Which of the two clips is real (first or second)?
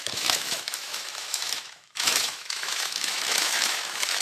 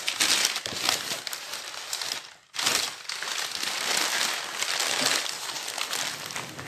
second